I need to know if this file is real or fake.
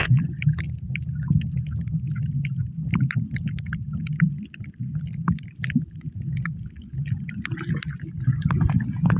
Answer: real